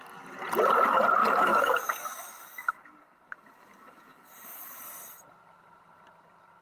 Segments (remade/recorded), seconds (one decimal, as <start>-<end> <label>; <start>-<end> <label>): 0.0-1.2 recorded; 1.2-4.8 remade; 4.8-6.6 recorded